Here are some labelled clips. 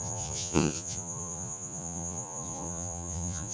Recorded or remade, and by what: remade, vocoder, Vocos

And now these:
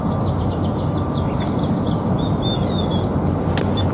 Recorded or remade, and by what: recorded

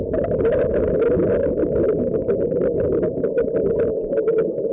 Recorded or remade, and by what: recorded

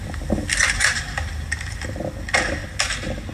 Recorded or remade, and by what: recorded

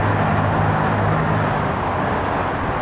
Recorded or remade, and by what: recorded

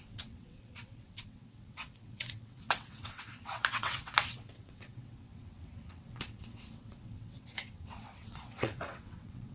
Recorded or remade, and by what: remade, vocoder, WaveNeXt